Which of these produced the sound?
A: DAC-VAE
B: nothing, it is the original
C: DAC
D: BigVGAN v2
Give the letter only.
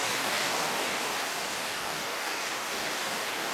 C